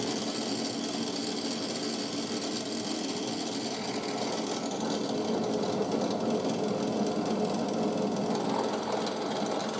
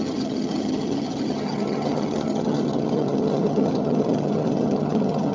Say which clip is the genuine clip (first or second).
first